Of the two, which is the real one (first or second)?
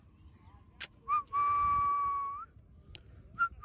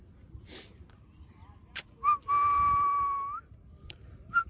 first